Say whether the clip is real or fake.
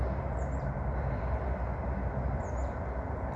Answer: real